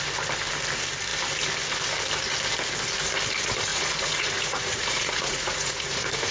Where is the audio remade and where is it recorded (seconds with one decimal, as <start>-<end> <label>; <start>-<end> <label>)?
0.0-3.7 recorded; 3.7-6.3 remade